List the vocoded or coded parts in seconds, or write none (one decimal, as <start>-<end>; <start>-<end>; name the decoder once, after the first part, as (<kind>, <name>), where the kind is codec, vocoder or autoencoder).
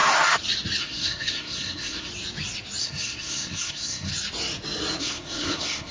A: 0.8-2.1 (codec, SNAC); 2.8-4.1; 5.0-5.9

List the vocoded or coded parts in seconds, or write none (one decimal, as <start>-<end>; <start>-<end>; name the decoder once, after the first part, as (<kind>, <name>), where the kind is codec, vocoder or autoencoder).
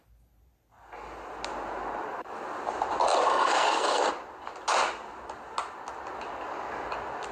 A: 3.3-4.1 (codec, SNAC)